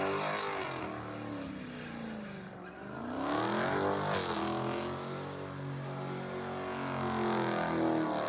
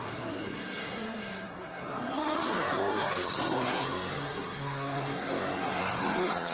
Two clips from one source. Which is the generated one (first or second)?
second